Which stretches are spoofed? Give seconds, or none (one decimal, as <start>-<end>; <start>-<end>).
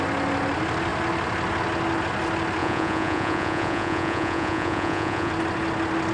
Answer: 2.6-5.3